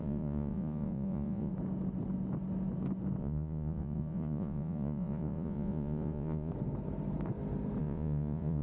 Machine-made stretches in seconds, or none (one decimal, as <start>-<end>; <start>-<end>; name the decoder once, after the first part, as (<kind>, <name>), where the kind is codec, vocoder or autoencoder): 0.0-1.5 (vocoder, Vocos); 3.2-6.5; 7.8-8.6